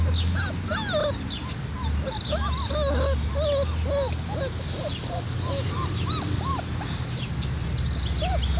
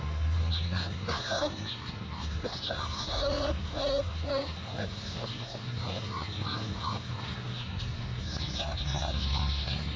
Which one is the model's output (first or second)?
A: second